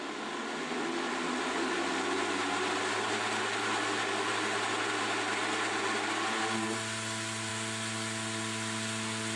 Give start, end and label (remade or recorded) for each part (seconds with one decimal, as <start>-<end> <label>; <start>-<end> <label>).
0.0-9.4 recorded